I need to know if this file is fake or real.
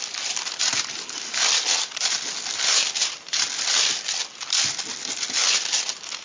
real